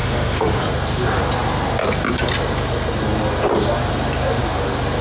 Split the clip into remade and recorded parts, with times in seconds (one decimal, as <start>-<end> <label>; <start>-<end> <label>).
0.0-0.6 remade; 0.6-5.0 recorded